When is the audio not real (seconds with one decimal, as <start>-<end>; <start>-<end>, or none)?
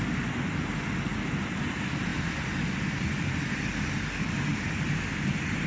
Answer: none